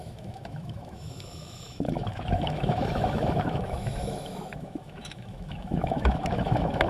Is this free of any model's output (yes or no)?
no